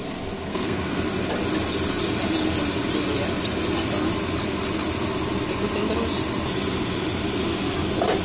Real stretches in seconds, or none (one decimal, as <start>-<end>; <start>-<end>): 0.0-0.5; 1.0-8.2